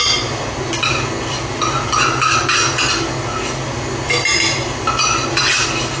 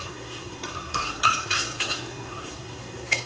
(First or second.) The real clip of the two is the first